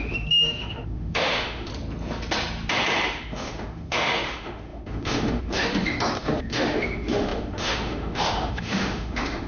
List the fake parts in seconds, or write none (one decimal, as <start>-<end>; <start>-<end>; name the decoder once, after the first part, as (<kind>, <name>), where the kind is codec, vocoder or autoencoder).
0.0-1.7 (autoencoder, DAC-VAE); 3.1-9.5